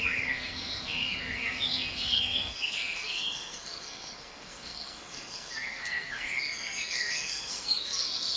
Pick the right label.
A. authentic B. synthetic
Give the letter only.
B